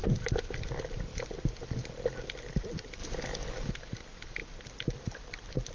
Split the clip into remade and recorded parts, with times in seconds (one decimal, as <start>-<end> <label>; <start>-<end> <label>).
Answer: 0.0-0.6 recorded; 0.6-1.1 remade; 1.1-2.6 recorded; 2.6-3.0 remade; 3.0-3.7 recorded; 3.7-5.7 remade